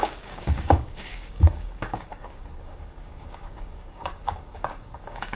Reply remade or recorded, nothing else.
remade